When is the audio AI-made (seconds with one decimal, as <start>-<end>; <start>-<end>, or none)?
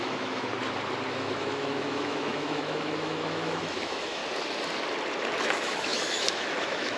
0.0-0.5; 1.1-4.2; 5.4-7.0